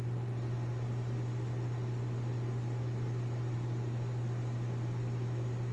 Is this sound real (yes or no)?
yes